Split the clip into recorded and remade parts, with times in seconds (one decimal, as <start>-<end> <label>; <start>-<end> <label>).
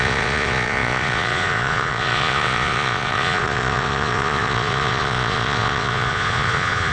0.0-6.9 remade